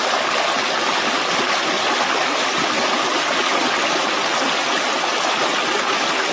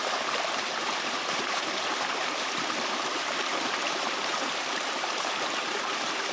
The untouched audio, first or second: first